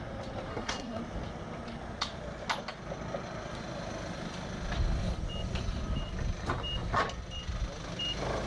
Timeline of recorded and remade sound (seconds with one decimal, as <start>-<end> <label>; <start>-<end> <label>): 0.0-0.5 recorded; 0.5-1.0 remade; 1.0-8.5 recorded